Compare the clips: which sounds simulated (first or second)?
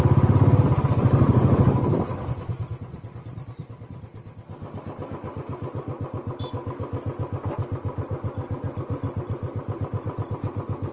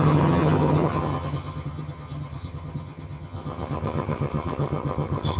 second